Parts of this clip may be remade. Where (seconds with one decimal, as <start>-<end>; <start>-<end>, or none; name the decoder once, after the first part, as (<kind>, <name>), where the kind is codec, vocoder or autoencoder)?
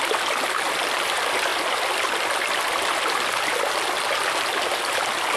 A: 0.0-1.5 (vocoder, BigVGAN v2); 4.3-5.4